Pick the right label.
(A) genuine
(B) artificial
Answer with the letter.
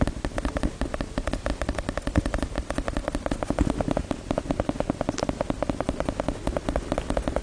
A